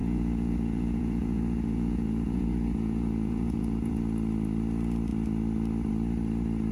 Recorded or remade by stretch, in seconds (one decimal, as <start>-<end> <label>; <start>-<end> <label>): 0.0-4.0 remade; 4.0-6.7 recorded